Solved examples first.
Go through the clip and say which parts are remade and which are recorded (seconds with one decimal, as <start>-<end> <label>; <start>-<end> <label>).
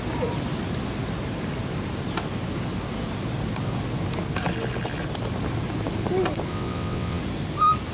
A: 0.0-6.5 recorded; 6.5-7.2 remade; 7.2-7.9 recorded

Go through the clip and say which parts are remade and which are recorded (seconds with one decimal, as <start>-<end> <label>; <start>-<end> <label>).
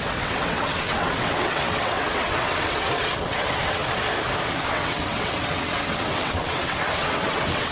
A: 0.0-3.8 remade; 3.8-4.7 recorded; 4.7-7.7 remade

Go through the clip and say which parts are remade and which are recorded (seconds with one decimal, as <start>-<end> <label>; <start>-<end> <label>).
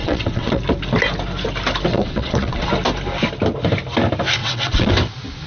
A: 0.0-0.6 remade; 0.6-1.9 recorded; 1.9-2.7 remade; 2.7-4.4 recorded; 4.4-4.9 remade; 4.9-5.5 recorded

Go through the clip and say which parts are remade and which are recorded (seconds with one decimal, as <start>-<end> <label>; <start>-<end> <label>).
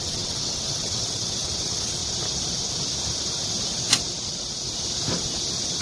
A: 0.0-2.0 remade; 2.0-5.8 recorded